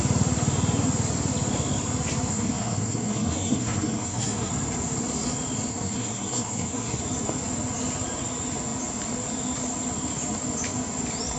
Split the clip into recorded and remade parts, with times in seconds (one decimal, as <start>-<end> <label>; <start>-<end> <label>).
0.0-2.3 recorded; 2.3-4.5 remade; 4.5-5.7 recorded; 5.7-7.0 remade; 7.0-11.4 recorded